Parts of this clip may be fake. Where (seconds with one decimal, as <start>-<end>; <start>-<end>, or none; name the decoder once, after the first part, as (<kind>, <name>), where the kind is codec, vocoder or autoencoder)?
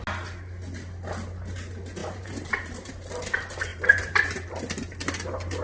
2.0-2.9 (vocoder, BigVGAN v2); 3.7-4.2